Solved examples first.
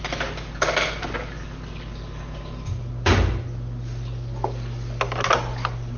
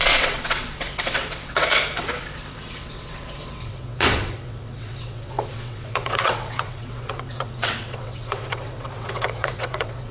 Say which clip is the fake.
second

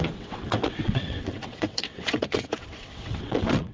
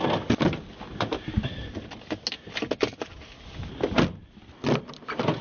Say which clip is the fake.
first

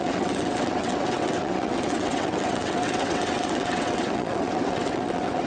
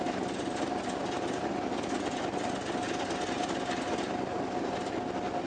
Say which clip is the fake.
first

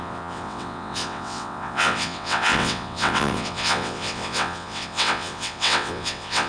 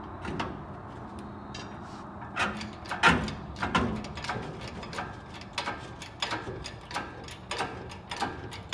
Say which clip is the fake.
first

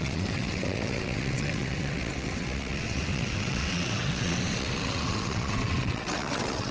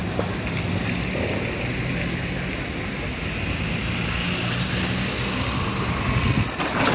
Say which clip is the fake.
first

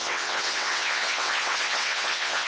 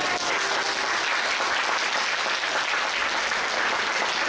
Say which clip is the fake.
first